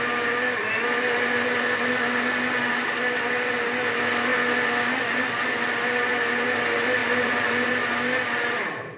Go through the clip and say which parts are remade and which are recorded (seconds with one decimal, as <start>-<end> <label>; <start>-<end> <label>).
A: 0.0-7.0 recorded; 7.0-7.7 remade; 7.7-9.0 recorded